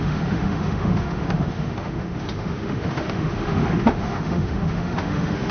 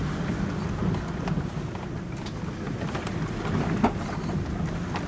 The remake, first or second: first